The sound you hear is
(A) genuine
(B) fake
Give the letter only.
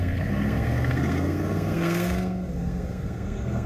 B